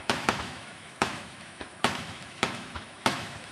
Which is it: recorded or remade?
remade